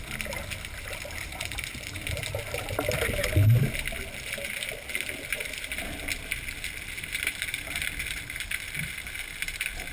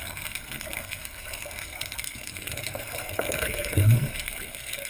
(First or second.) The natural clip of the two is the first